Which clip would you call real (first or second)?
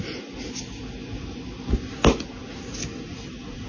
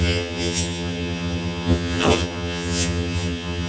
first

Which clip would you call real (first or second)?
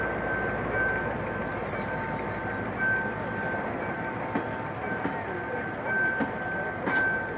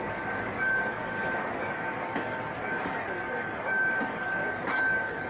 first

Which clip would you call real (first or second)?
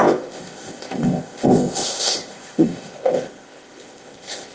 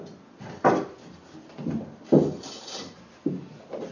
second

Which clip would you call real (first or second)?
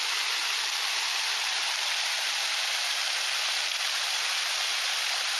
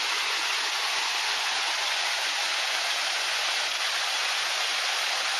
first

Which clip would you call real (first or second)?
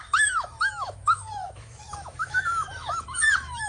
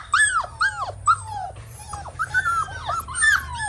second